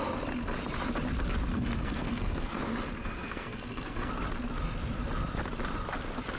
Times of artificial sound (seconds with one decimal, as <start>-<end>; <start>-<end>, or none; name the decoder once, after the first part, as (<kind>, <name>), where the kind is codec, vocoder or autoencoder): 1.5-2.6 (codec, SNAC); 3.0-4.1